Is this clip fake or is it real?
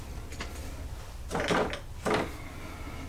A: real